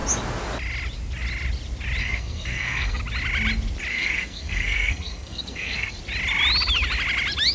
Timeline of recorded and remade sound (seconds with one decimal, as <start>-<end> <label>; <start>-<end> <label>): 0.0-2.0 recorded; 2.0-3.0 remade; 3.0-3.9 recorded; 3.9-6.0 remade; 6.0-7.5 recorded